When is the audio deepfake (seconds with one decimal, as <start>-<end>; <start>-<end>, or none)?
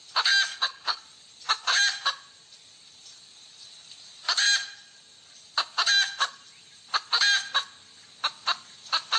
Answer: 0.5-1.0